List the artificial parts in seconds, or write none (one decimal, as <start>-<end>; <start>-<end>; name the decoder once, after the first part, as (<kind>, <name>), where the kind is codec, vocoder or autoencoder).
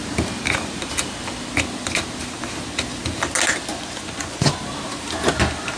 3.7-4.6 (vocoder, Vocos)